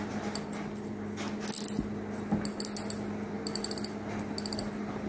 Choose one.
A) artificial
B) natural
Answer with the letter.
B